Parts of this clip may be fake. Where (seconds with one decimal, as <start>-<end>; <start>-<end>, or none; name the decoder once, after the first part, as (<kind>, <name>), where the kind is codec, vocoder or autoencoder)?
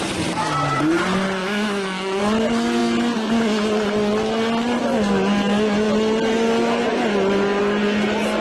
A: 1.4-2.2 (autoencoder, DAC-VAE)